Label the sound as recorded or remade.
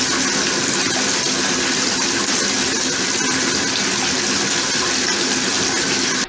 recorded